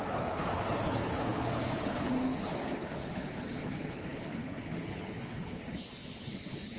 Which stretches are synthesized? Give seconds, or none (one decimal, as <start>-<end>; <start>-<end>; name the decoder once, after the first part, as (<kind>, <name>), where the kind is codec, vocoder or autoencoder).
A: 0.0-6.8 (codec, HILCodec)